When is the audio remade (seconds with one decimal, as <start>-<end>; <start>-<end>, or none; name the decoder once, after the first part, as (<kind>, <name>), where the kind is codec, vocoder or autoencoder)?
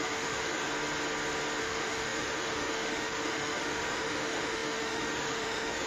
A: 0.0-0.7 (autoencoder, DAC-VAE); 1.6-5.9